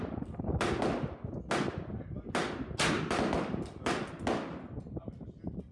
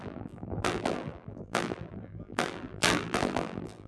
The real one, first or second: first